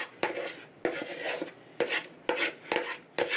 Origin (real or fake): real